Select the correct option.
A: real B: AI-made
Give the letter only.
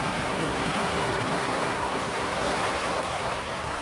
B